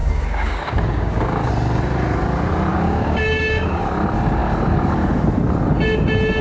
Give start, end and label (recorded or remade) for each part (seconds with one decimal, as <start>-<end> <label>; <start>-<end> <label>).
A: 0.0-1.5 remade; 1.5-2.7 recorded; 2.7-3.8 remade; 3.8-6.4 recorded